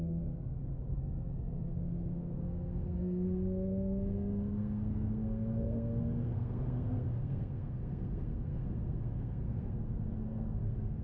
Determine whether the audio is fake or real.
fake